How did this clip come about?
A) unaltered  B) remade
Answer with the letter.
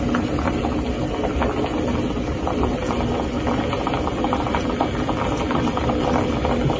A